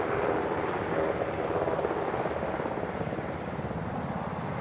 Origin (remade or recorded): recorded